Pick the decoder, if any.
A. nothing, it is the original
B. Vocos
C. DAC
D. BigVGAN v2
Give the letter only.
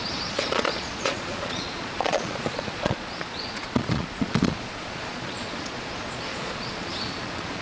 B